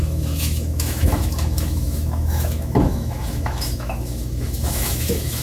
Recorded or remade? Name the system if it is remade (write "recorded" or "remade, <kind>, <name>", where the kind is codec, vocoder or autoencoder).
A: remade, autoencoder, DAC-VAE